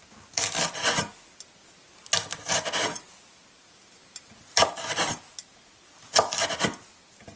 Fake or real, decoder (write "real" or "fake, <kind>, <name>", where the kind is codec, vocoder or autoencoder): real